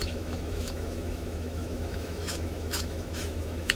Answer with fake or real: fake